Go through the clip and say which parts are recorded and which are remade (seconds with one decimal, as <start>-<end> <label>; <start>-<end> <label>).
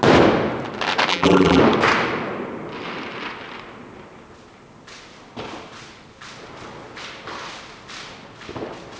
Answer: 0.0-1.1 recorded; 1.1-1.6 remade; 1.6-9.0 recorded